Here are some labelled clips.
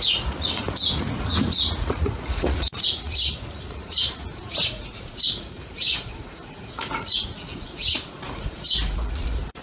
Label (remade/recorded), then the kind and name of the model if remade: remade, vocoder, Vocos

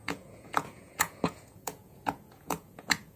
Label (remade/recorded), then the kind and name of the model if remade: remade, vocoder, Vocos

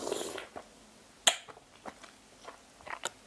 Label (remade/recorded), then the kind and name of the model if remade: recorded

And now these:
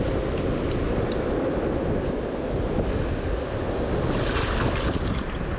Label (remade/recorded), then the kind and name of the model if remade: recorded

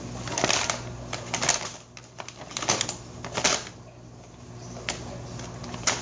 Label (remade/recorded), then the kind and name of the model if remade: recorded